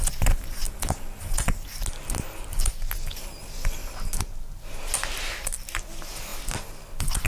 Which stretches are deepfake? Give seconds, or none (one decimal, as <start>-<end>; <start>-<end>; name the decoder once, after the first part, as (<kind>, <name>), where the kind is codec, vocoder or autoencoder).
4.9-5.8 (vocoder, BigVGAN v2)